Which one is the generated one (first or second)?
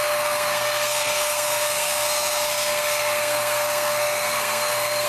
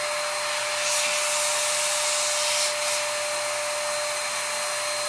first